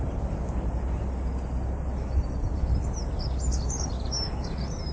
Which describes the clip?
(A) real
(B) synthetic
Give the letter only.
A